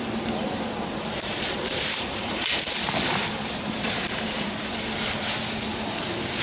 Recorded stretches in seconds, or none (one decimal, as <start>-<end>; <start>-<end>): 0.0-0.9; 4.7-6.4